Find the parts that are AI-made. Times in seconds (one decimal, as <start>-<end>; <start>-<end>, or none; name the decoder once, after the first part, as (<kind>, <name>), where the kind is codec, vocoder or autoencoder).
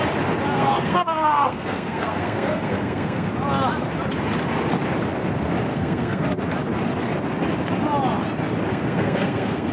0.5-3.3 (codec, SNAC); 5.7-6.3; 8.7-9.7